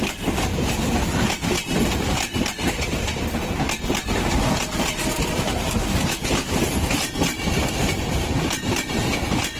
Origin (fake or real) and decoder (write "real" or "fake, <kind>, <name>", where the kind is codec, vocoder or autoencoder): fake, vocoder, BigVGAN v2